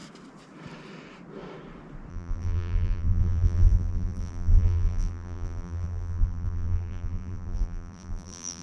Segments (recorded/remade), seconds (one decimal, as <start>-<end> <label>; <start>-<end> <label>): 0.0-2.1 recorded; 2.1-8.6 remade

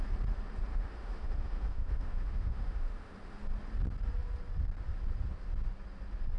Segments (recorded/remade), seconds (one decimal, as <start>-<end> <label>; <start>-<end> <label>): 0.0-0.7 recorded; 0.7-3.4 remade; 3.4-6.4 recorded

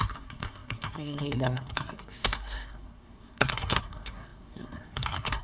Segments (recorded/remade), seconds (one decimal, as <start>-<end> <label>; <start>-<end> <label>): 0.0-5.4 remade

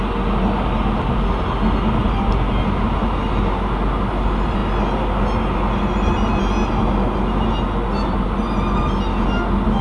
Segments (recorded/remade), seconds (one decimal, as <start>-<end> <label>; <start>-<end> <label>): 0.0-9.8 recorded

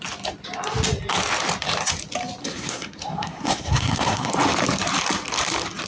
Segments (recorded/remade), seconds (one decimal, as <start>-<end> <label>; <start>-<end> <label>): 0.0-2.4 recorded; 2.4-4.3 remade; 4.3-5.9 recorded

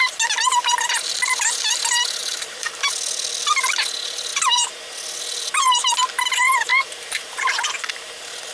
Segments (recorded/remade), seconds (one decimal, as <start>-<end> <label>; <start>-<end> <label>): 0.0-2.2 recorded; 2.2-2.8 remade; 2.8-6.7 recorded; 6.7-8.0 remade; 8.0-8.5 recorded

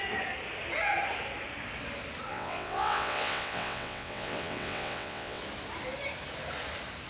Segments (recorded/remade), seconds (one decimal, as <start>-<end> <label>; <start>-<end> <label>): 0.0-2.3 recorded; 2.3-5.4 remade; 5.4-7.1 recorded